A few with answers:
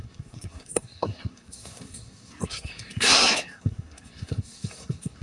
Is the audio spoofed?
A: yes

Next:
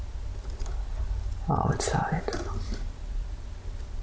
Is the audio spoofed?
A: no